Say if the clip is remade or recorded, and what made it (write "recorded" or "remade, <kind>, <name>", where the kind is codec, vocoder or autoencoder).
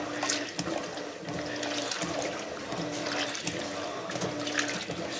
recorded